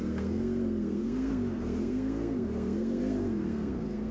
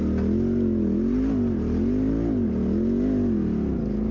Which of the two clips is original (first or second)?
second